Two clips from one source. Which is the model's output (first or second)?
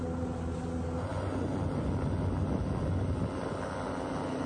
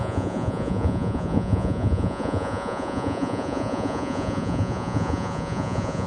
second